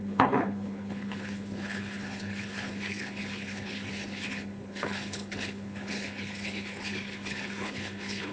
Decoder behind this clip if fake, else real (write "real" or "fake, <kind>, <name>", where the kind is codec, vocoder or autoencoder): fake, codec, HILCodec